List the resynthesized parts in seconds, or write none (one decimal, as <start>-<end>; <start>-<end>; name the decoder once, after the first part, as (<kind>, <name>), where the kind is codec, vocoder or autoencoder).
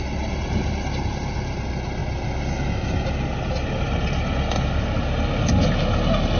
none